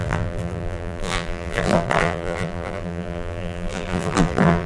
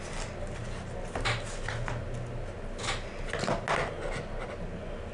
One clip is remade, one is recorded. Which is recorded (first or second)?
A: second